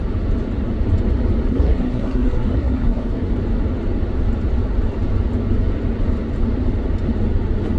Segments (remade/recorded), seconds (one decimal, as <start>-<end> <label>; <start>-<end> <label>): 0.0-1.5 recorded; 1.5-3.3 remade; 3.3-7.8 recorded